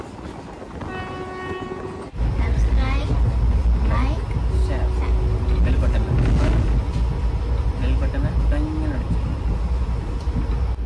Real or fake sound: real